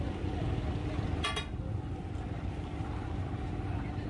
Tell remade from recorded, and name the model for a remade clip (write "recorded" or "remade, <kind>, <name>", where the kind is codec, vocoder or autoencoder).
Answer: recorded